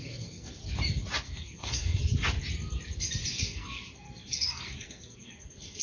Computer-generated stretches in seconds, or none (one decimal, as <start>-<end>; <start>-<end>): 0.0-0.6; 1.2-2.0; 3.3-5.8